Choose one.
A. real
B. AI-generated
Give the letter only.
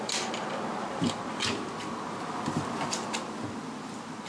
A